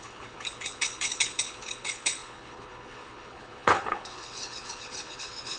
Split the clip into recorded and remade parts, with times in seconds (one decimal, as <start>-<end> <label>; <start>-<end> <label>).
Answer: 0.0-5.6 remade

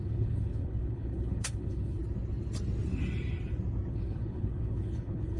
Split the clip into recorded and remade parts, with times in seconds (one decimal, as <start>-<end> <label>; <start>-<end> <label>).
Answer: 0.0-2.0 remade; 2.0-3.9 recorded; 3.9-5.4 remade

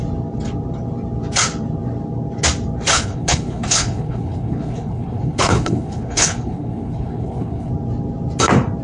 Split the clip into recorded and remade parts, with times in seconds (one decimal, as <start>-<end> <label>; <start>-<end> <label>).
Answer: 0.0-2.9 recorded; 2.9-7.7 remade; 7.7-8.8 recorded

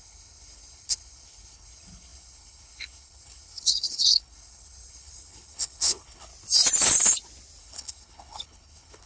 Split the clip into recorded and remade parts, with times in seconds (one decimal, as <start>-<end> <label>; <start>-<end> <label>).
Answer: 0.0-6.3 remade; 6.3-7.6 recorded; 7.6-9.1 remade